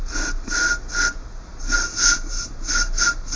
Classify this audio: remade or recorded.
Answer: recorded